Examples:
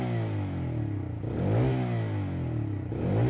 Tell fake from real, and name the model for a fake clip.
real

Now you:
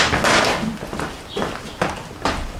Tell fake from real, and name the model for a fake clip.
real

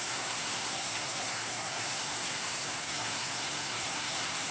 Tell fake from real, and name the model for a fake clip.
fake, codec, SNAC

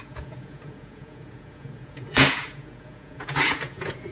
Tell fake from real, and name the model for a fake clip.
fake, vocoder, Vocos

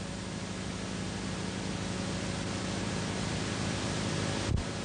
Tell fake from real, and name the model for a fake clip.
real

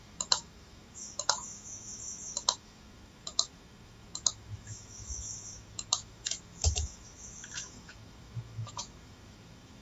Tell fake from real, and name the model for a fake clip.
fake, autoencoder, DAC-VAE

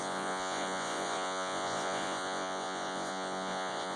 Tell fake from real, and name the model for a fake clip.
fake, vocoder, Vocos